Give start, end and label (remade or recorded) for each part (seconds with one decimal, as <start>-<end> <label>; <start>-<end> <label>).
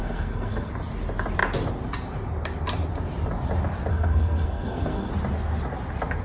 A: 0.0-0.7 remade; 0.7-3.9 recorded; 3.9-5.1 remade; 5.1-6.2 recorded